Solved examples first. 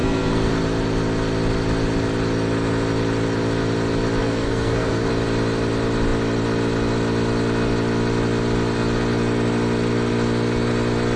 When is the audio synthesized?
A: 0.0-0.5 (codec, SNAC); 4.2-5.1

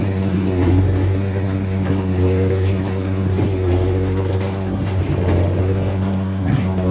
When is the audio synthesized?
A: 0.0-5.0 (codec, SNAC); 5.6-6.9

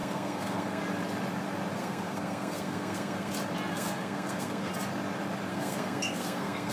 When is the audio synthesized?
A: 0.0-0.8 (codec, SNAC); 1.8-3.3; 3.7-4.7; 5.5-6.7

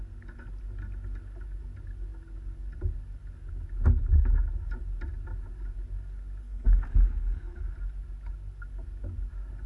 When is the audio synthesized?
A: 6.4-7.6 (codec, SNAC)

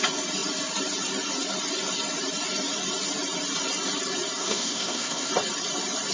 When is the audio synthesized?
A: 4.4-5.3 (codec, SNAC)

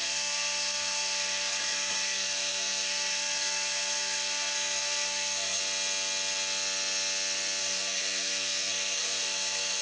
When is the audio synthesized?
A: 0.0-5.6 (codec, SNAC); 7.6-9.8

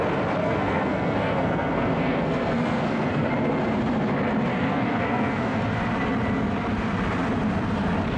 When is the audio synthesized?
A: 0.4-3.3 (codec, SNAC); 4.5-5.6